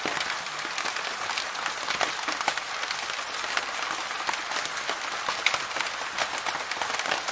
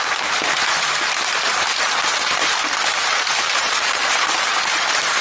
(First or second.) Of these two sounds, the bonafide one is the first